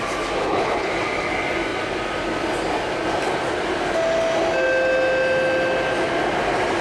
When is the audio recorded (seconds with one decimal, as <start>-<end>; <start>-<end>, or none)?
0.0-0.4; 0.9-6.8